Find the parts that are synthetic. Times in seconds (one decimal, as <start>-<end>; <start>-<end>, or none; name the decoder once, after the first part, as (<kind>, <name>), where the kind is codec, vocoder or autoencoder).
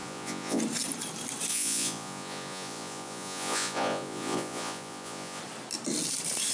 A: 0.0-0.6 (vocoder, Vocos); 1.5-5.4